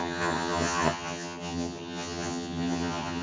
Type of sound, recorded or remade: remade